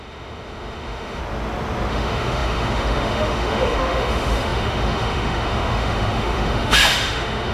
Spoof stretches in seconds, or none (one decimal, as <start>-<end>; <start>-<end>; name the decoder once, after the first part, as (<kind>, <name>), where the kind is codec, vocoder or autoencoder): 0.0-1.2 (autoencoder, DAC-VAE); 1.9-7.5